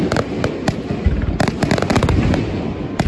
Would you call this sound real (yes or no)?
yes